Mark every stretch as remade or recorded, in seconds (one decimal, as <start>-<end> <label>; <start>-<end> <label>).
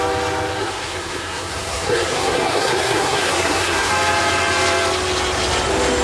0.0-0.6 recorded; 0.6-3.9 remade; 3.9-6.0 recorded